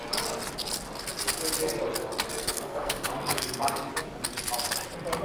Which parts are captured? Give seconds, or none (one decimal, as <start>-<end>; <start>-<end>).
0.0-2.4; 3.9-5.2